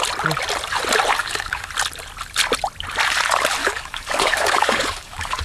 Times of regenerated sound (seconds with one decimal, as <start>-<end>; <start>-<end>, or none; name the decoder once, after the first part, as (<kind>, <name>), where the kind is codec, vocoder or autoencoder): 1.2-1.7 (codec, DAC); 3.6-5.4